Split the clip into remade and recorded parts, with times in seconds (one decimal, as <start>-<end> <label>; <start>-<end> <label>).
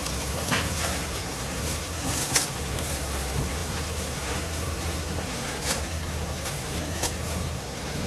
0.0-8.1 remade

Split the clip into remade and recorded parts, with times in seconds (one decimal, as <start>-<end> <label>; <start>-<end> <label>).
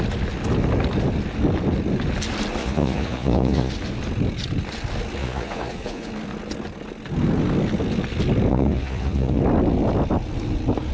0.0-2.6 recorded; 2.6-3.7 remade; 3.7-5.2 recorded; 5.2-6.1 remade; 6.1-8.5 recorded; 8.5-9.4 remade; 9.4-10.9 recorded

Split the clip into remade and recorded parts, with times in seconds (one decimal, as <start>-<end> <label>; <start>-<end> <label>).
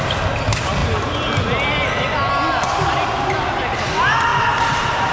0.0-4.3 recorded; 4.3-5.1 remade